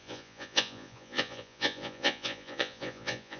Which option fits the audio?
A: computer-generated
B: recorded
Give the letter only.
A